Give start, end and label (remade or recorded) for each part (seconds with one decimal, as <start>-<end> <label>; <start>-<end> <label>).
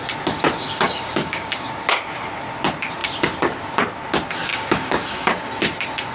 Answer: 0.0-0.6 recorded; 0.6-1.7 remade; 1.7-4.5 recorded; 4.5-5.5 remade; 5.5-6.1 recorded